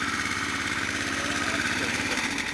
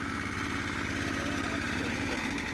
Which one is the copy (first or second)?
first